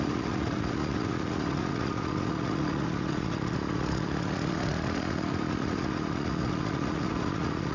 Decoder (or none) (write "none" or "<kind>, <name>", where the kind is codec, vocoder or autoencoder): vocoder, Vocos